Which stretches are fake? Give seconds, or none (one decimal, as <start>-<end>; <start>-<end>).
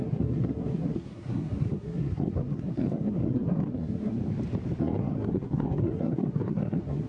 0.0-4.2; 4.8-7.1